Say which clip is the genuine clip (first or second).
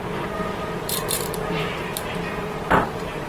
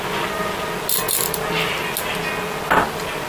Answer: second